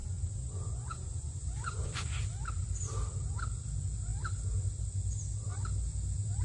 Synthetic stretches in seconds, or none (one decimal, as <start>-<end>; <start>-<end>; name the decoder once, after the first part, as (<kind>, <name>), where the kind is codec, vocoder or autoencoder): 0.0-2.2 (vocoder, Vocos)